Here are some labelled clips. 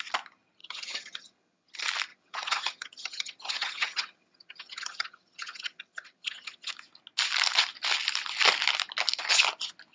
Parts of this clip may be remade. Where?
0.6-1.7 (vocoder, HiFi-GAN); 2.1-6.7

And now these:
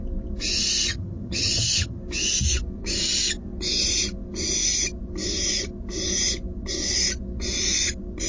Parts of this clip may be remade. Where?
0.9-2.0 (vocoder, HiFi-GAN)

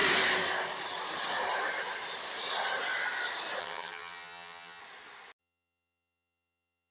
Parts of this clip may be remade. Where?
3.6-4.8 (vocoder, HiFi-GAN); 5.4-6.9

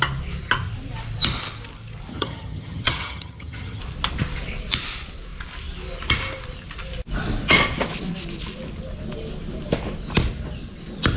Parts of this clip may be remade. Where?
2.1-3.8 (vocoder, HiFi-GAN)

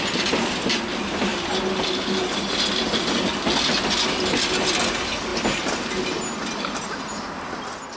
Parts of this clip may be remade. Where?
none

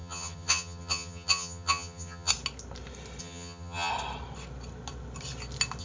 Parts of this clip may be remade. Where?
0.0-2.3 (vocoder, HiFi-GAN); 3.2-3.9

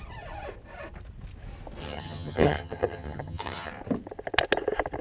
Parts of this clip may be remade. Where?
1.8-3.7 (vocoder, HiFi-GAN)

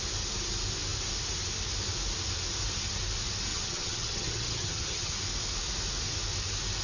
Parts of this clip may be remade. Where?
3.5-5.1 (vocoder, HiFi-GAN)